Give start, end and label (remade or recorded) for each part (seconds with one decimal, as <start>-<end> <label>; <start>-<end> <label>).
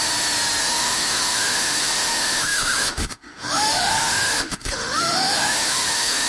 0.0-0.6 recorded; 0.6-6.3 remade